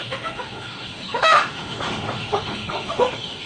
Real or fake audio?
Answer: fake